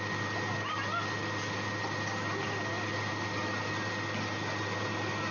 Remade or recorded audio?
recorded